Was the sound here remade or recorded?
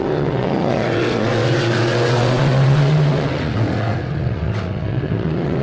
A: remade